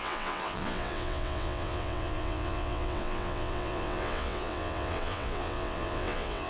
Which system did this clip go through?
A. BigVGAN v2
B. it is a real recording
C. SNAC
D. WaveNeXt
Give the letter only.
D